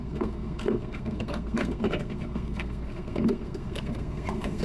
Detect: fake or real fake